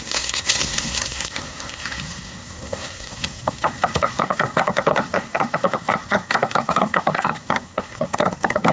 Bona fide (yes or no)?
no